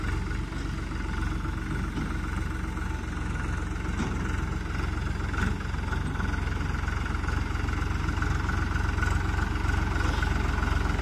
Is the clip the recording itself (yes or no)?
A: yes